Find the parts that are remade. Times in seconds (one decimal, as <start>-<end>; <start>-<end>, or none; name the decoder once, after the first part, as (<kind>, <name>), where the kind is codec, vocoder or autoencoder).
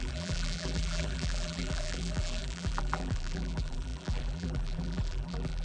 0.0-5.6 (vocoder, BigVGAN v2)